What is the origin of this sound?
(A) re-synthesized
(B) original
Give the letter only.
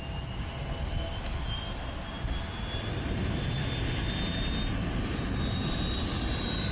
B